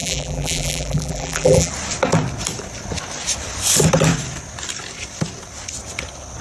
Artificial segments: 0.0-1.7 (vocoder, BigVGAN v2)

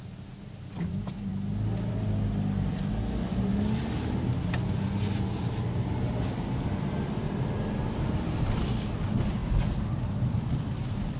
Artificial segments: 9.4-10.1 (vocoder, BigVGAN v2)

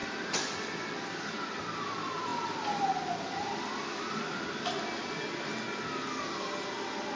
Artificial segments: 0.0-0.9 (vocoder, BigVGAN v2); 2.3-4.8

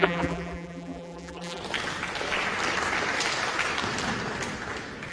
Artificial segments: 0.0-1.6 (vocoder, BigVGAN v2)

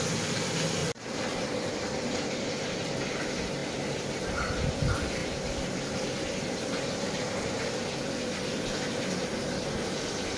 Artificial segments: 0.8-2.7 (vocoder, BigVGAN v2); 5.2-7.6